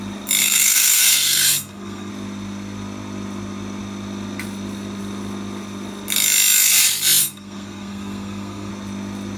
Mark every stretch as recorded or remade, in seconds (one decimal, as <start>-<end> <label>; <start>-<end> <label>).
0.0-0.4 recorded; 0.4-2.1 remade; 2.1-7.2 recorded; 7.2-8.7 remade; 8.7-9.4 recorded